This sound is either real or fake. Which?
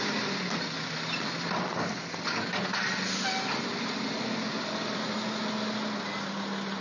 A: real